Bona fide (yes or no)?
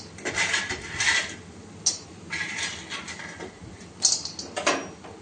yes